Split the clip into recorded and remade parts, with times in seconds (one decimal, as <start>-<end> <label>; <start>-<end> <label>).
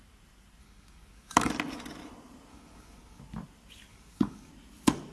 0.0-0.6 recorded; 0.6-1.5 remade; 1.5-2.5 recorded; 2.5-3.2 remade; 3.2-3.9 recorded; 3.9-4.5 remade; 4.5-5.1 recorded